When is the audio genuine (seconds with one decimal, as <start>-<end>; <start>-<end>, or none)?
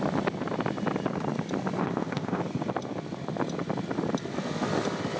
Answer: 0.0-1.8; 2.4-5.2